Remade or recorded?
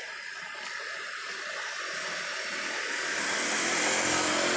recorded